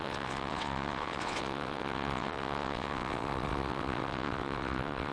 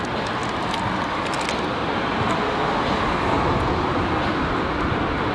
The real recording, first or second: second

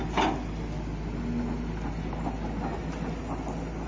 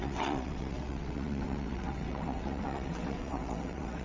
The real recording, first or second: first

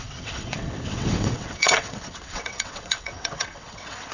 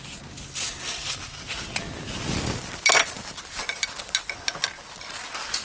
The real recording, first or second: second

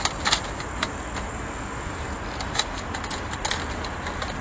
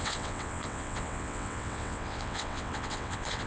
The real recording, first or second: first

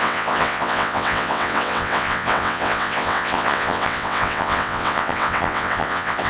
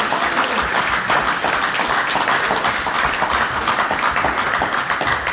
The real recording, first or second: second